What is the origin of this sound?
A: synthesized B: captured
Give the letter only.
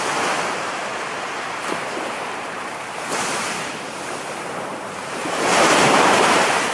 A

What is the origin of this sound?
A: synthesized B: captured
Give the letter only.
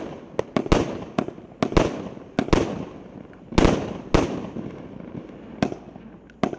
B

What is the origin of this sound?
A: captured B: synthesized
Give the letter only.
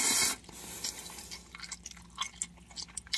A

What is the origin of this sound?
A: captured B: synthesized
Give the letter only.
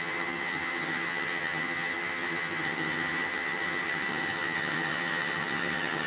B